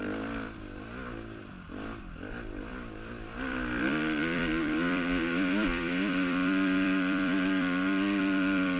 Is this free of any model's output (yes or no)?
no